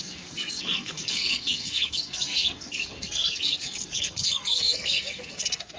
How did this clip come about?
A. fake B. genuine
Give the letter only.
A